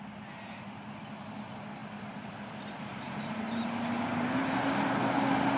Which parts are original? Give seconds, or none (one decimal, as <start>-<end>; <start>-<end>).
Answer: 0.0-2.9; 3.6-4.1; 4.7-5.6